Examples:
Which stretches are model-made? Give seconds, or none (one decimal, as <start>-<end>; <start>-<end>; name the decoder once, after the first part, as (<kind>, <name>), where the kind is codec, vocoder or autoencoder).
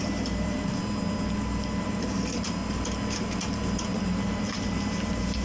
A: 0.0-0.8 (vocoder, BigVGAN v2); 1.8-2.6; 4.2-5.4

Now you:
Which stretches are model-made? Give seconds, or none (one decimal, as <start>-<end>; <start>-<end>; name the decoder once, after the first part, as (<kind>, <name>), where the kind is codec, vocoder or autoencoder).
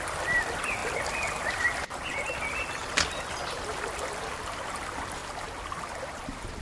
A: 5.2-6.6 (vocoder, BigVGAN v2)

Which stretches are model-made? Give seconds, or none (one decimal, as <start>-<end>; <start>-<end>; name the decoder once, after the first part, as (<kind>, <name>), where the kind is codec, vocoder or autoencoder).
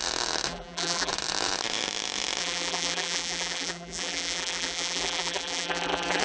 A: 0.5-1.1 (vocoder, BigVGAN v2); 2.4-6.2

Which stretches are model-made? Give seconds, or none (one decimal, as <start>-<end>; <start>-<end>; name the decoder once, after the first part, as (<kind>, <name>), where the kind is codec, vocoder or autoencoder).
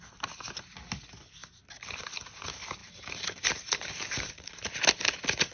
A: 2.8-4.5 (vocoder, BigVGAN v2)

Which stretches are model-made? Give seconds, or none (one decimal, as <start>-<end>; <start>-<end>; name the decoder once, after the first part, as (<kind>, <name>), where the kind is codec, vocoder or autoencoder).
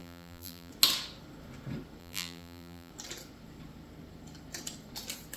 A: 0.0-0.7 (vocoder, BigVGAN v2); 2.0-2.9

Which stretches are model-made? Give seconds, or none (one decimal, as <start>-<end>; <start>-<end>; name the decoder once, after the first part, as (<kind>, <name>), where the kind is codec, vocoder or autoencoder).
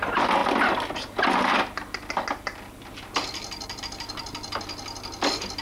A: none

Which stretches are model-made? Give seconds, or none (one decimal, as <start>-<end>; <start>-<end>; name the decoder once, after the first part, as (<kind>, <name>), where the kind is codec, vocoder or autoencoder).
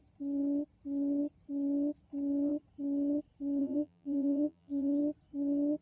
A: 3.6-5.0 (vocoder, BigVGAN v2)